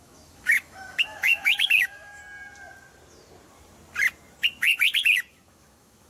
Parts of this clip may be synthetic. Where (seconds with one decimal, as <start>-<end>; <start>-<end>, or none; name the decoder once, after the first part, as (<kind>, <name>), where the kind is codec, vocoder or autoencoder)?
0.0-2.2 (autoencoder, DAC-VAE); 5.3-6.1